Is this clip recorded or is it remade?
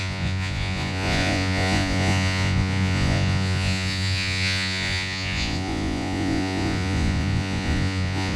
remade